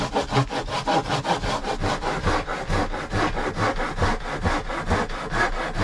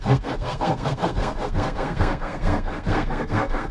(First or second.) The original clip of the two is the first